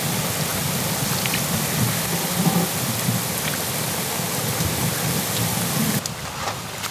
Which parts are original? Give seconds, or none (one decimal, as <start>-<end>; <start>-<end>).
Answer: 0.0-6.9